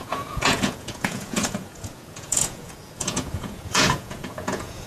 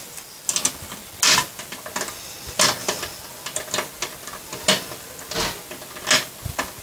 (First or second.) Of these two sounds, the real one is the second